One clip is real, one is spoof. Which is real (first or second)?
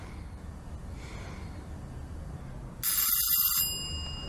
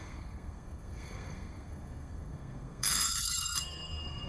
first